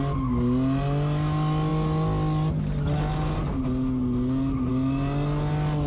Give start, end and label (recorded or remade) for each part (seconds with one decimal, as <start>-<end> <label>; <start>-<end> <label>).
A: 0.0-5.9 recorded